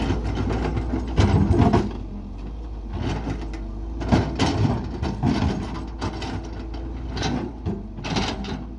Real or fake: real